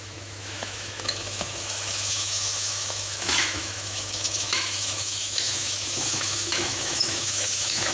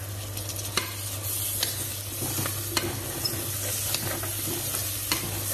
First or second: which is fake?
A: first